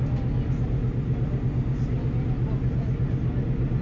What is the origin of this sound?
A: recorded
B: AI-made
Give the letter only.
A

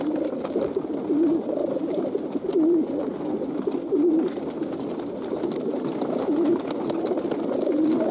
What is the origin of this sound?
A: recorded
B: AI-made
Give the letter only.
A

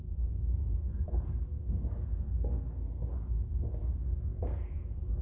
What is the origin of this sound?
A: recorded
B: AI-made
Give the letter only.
B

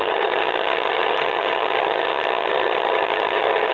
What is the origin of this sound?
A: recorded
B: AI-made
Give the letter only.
B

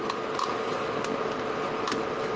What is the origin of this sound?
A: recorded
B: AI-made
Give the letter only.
A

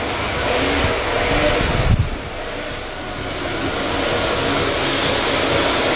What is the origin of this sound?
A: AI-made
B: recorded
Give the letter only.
B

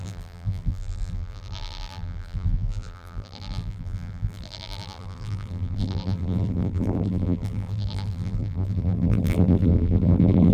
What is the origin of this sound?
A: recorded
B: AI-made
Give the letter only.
B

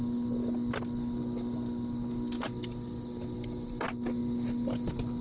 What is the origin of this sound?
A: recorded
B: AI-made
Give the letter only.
A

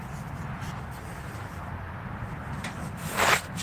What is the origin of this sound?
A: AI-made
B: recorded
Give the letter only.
B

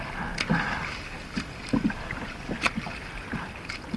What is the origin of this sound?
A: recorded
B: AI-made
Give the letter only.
A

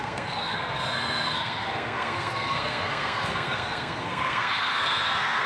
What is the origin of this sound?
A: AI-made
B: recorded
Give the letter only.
A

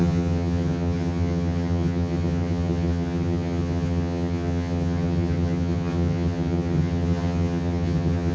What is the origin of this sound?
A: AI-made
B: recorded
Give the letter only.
A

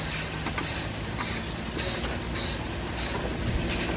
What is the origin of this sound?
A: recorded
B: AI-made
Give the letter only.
A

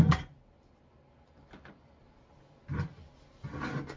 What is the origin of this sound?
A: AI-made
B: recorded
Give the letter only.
B